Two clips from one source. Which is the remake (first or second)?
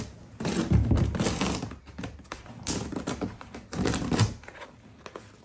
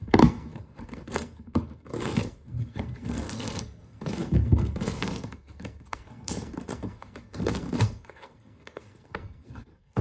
second